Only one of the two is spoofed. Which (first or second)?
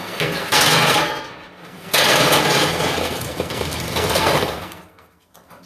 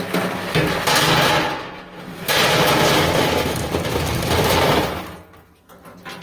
first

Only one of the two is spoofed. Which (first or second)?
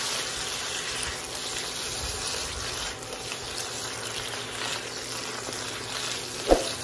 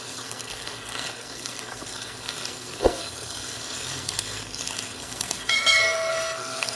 second